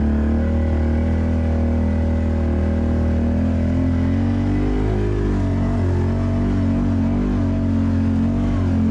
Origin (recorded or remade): recorded